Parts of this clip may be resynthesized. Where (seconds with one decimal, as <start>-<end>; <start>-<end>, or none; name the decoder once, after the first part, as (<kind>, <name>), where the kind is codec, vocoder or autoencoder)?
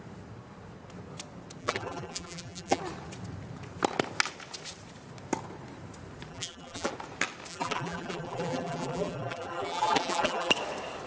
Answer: 1.6-2.8 (vocoder, BigVGAN v2); 6.3-6.9; 7.5-10.5